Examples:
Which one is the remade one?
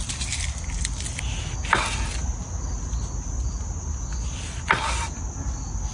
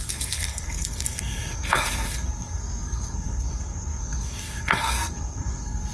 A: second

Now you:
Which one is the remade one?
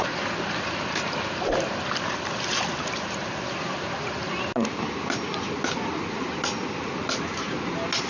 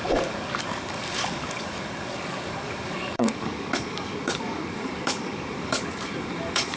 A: second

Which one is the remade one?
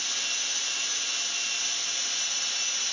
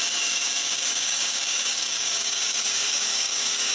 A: second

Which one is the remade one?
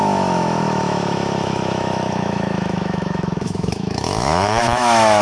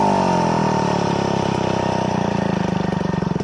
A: first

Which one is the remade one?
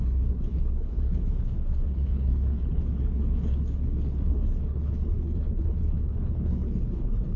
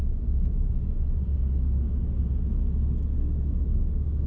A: first